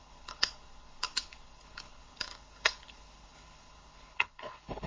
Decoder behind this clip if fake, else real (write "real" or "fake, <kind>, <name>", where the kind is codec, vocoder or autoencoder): fake, codec, HILCodec